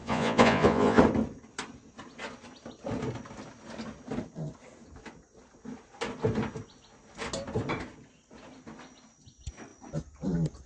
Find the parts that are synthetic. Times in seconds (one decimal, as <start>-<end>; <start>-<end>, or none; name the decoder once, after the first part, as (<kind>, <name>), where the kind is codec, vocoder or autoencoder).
0.0-1.0 (vocoder, Vocos)